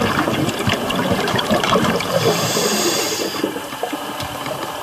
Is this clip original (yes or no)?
no